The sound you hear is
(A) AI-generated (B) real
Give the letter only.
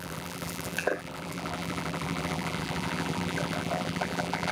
A